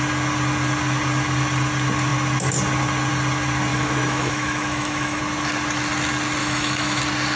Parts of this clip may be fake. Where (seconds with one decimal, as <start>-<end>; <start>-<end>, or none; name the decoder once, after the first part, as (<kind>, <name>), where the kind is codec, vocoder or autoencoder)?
3.7-5.2 (autoencoder, DAC-VAE); 6.4-7.0